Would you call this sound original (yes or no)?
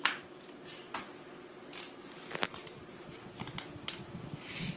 yes